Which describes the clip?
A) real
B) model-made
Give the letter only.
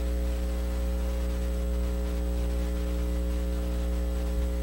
A